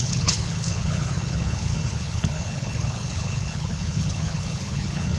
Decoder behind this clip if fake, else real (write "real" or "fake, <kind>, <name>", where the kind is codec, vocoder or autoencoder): fake, codec, HILCodec